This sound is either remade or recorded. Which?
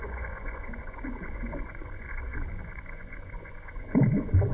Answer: remade